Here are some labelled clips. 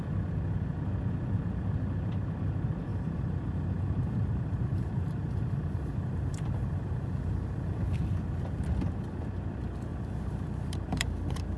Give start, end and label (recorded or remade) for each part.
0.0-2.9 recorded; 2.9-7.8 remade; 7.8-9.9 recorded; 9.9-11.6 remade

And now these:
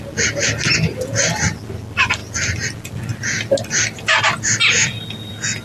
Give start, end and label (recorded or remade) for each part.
0.0-5.6 recorded